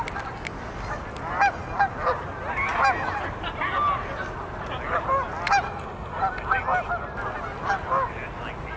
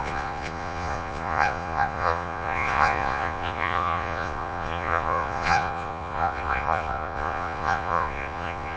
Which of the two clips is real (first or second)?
first